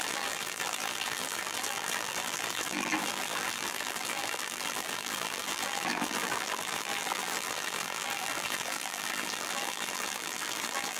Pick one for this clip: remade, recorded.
remade